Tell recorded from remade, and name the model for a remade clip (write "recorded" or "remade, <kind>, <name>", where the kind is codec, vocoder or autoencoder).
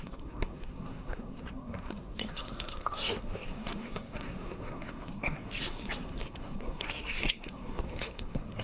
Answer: remade, codec, SNAC